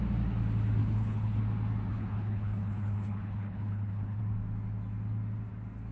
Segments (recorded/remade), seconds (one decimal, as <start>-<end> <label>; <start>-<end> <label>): 0.0-0.8 recorded; 0.8-1.4 remade; 1.4-1.9 recorded; 1.9-4.2 remade; 4.2-5.9 recorded

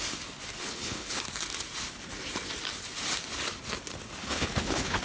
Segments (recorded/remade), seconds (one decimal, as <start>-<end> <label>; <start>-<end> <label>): 0.0-0.6 recorded; 0.6-1.2 remade; 1.2-4.2 recorded; 4.2-5.0 remade

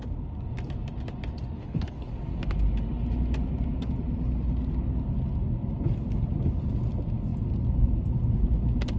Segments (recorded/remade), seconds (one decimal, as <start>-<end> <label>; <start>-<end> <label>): 0.0-1.6 recorded; 1.6-2.1 remade; 2.1-9.0 recorded